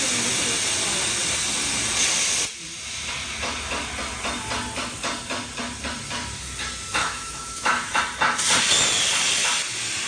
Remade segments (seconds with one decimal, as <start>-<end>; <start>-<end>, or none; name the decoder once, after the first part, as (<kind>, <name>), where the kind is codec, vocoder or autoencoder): 7.0-8.0 (autoencoder, DAC-VAE)